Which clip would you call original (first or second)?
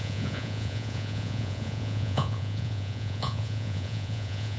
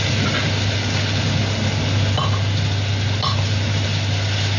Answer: second